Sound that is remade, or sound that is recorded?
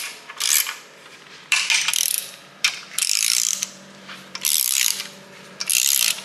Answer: remade